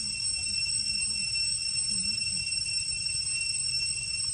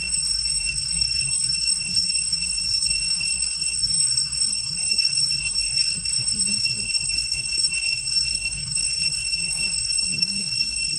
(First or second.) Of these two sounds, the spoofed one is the second